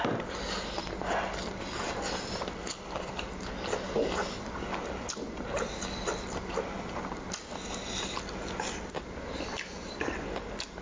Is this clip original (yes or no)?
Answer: yes